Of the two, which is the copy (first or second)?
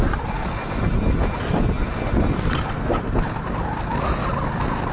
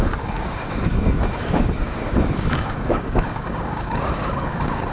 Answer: second